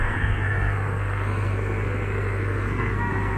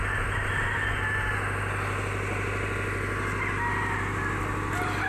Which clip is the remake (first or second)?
first